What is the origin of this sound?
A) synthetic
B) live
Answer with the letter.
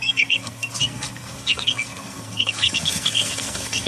A